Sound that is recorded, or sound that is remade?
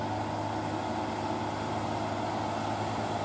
recorded